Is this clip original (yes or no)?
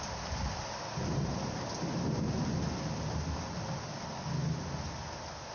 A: yes